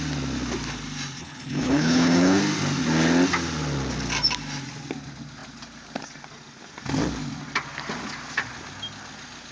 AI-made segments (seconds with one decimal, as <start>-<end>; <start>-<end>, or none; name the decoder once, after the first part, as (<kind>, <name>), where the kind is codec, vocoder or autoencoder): 1.2-2.4 (codec, HILCodec)